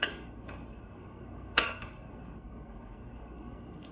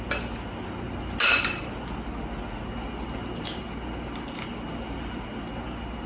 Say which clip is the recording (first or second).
second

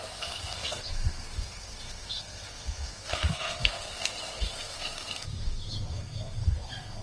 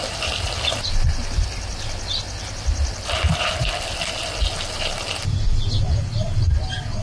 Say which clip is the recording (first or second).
second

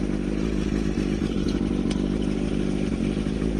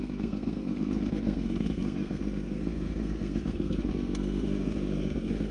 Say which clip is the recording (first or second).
first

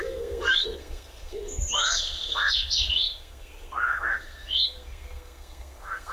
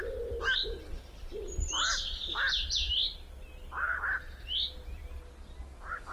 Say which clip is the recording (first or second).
second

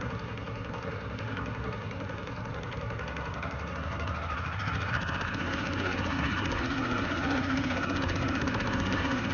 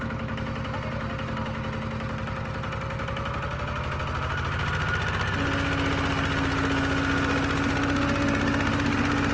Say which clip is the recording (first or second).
second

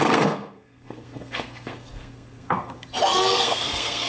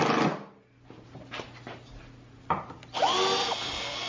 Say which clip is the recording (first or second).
second